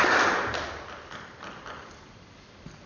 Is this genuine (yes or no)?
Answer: yes